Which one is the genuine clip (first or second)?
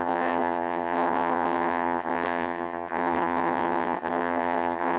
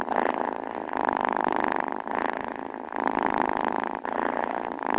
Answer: second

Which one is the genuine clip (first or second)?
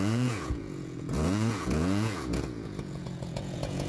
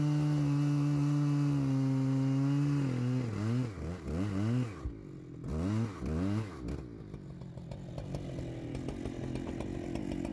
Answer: second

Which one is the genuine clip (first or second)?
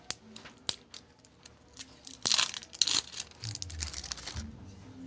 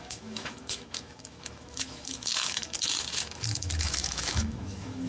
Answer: first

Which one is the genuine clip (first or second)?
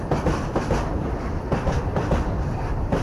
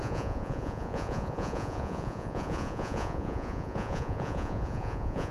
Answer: first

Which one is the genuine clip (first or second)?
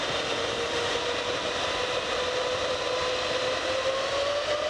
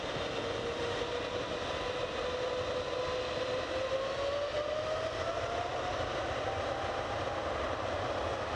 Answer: second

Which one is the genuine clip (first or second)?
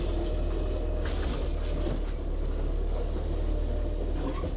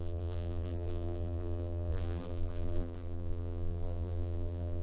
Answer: first